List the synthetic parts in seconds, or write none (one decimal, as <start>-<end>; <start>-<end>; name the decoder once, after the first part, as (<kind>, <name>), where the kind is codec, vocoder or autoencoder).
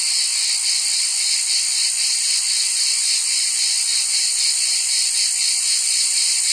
none